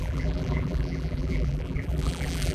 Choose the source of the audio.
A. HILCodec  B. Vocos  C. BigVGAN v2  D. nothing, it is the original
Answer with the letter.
C